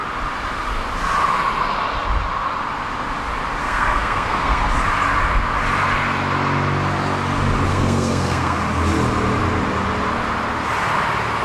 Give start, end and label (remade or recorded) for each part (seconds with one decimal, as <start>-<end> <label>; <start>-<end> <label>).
0.0-3.6 recorded; 3.6-4.6 remade; 4.6-7.7 recorded; 7.7-8.6 remade; 8.6-11.4 recorded